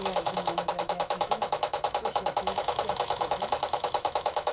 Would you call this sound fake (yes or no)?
yes